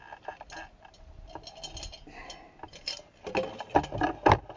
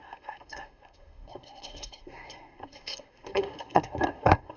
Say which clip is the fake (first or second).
second